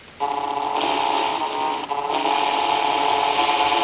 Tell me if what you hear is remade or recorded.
recorded